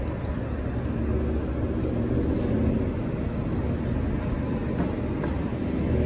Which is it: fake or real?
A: real